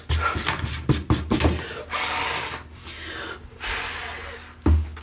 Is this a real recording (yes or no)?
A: yes